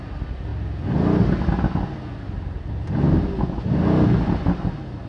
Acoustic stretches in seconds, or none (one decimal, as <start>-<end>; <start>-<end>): 0.0-5.1